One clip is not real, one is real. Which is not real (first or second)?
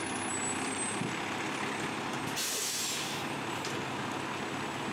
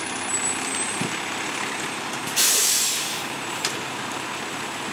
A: second